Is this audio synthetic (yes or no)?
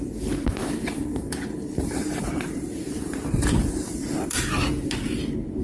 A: yes